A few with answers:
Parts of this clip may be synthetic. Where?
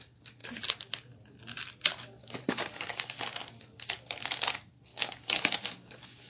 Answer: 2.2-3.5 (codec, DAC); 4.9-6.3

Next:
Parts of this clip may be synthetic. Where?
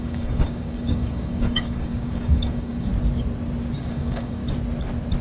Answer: 0.0-2.9 (codec, DAC); 3.8-4.4